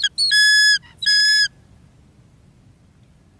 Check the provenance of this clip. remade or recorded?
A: recorded